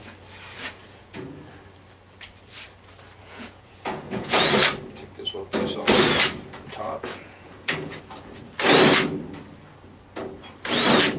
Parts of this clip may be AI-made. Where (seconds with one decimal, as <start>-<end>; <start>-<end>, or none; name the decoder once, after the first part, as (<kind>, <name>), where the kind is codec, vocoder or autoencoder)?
0.8-1.5 (vocoder, Vocos); 3.2-4.5; 7.1-8.0